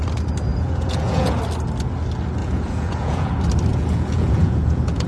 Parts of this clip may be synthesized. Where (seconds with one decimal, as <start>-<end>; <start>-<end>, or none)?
0.5-1.4; 2.4-3.3; 3.7-5.1

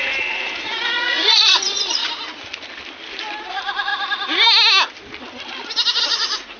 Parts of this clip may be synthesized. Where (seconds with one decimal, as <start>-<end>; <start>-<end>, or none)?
0.0-2.0; 3.4-3.9; 6.0-6.6

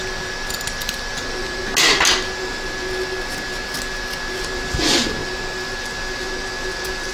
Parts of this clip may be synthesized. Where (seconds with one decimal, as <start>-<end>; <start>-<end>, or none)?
none